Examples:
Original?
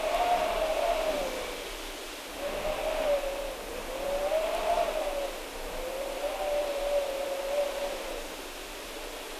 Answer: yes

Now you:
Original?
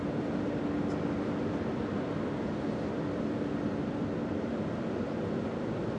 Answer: yes